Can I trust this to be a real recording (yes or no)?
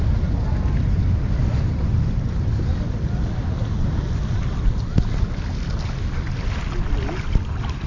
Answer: yes